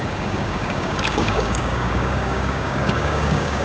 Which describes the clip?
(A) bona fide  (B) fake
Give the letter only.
B